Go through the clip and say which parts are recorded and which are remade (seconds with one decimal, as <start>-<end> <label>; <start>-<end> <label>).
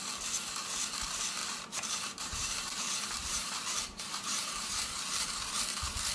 0.0-1.4 recorded; 1.4-5.1 remade; 5.1-6.1 recorded